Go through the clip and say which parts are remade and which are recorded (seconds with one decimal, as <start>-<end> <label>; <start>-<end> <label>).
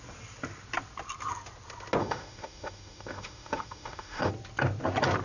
0.0-2.0 recorded; 2.0-4.3 remade; 4.3-5.2 recorded